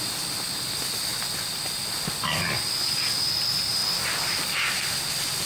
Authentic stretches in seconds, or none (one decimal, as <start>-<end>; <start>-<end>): 0.0-3.8; 5.1-5.5